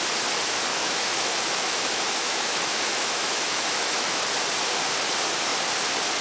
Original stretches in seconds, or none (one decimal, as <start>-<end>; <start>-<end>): 0.0-0.7; 4.2-6.2